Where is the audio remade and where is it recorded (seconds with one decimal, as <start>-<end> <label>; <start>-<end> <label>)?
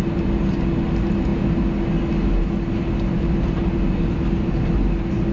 0.0-5.3 recorded